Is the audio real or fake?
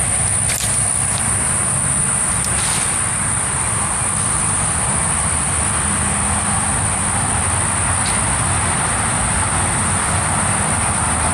real